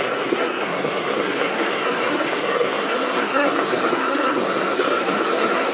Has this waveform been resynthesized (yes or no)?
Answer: yes